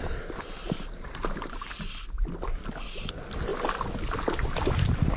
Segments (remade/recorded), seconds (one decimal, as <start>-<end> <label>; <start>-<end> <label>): 0.0-5.2 recorded